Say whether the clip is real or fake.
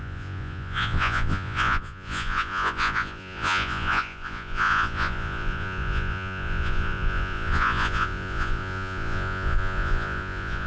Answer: fake